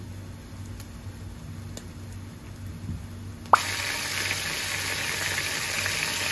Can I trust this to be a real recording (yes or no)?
yes